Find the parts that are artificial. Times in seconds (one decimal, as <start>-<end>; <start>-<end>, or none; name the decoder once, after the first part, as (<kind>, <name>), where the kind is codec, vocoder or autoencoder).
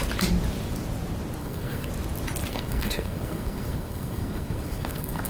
1.4-1.9 (codec, SNAC); 2.5-5.3